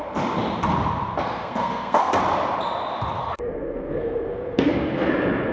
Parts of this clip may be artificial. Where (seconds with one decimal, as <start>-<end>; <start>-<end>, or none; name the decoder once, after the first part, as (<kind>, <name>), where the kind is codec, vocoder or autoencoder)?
1.2-2.2 (codec, SNAC); 3.2-5.1